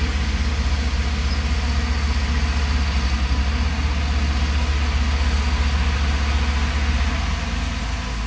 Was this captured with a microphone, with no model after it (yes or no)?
yes